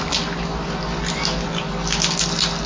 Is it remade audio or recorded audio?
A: recorded